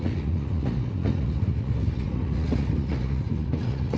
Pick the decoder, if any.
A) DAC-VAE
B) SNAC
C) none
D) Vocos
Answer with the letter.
D